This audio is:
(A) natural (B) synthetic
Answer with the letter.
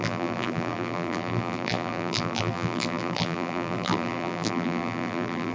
B